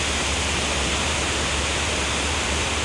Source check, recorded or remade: remade